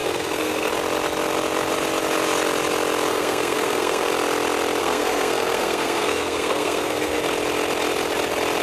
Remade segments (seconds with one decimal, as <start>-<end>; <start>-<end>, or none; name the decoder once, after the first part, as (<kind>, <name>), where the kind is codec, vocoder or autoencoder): 0.0-0.7 (codec, SNAC); 3.1-4.1; 4.8-7.2